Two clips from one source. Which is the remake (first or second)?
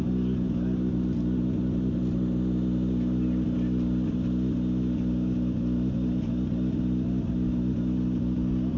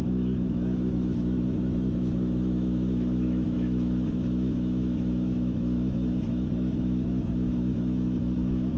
second